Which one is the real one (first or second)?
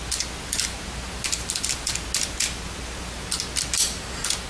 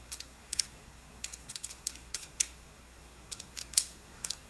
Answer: first